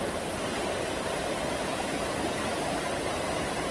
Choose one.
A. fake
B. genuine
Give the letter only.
A